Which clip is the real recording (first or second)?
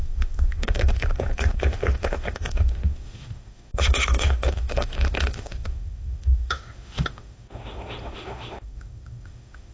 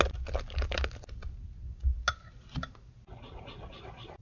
second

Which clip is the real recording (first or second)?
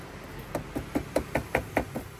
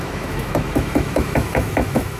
first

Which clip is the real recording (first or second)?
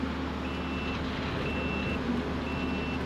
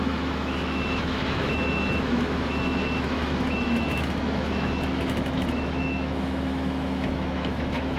first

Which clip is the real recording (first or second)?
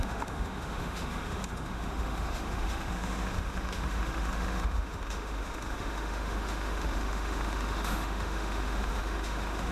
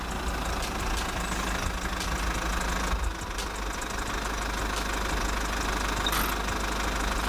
second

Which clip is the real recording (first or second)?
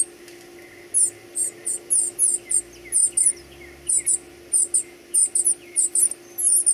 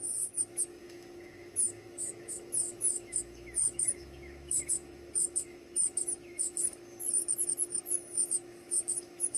first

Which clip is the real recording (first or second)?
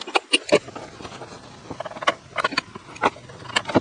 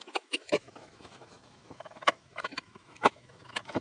first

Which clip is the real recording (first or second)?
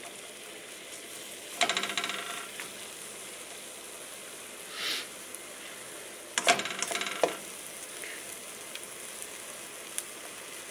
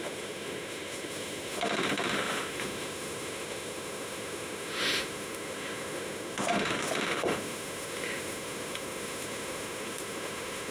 first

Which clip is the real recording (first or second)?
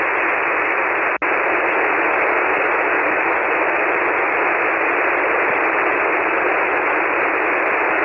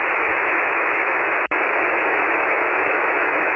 first